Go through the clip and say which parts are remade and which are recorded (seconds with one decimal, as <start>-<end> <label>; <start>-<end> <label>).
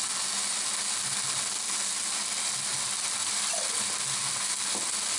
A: 0.0-3.2 recorded; 3.2-3.8 remade; 3.8-5.2 recorded